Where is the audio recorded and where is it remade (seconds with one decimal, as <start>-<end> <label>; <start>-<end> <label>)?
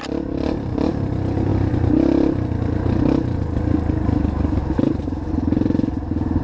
0.0-6.4 recorded